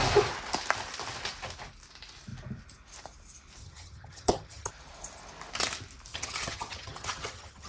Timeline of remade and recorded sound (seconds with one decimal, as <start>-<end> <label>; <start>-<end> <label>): 0.0-3.6 recorded; 3.6-4.7 remade; 4.7-6.1 recorded; 6.1-7.7 remade